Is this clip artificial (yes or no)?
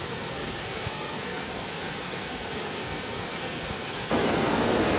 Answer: yes